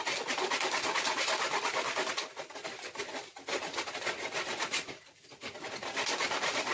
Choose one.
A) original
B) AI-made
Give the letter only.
A